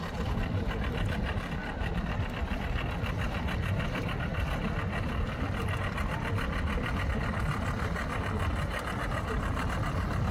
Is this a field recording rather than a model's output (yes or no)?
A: yes